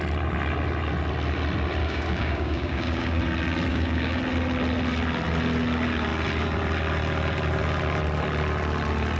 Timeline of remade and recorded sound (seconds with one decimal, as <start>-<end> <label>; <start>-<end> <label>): 0.0-1.8 recorded; 1.8-3.2 remade; 3.2-3.7 recorded; 3.7-4.2 remade; 4.2-9.2 recorded

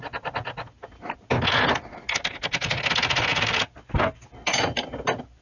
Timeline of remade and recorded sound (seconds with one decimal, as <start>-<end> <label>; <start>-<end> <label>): 0.0-5.4 recorded